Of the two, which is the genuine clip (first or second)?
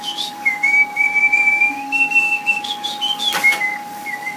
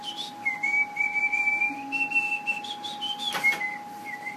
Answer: second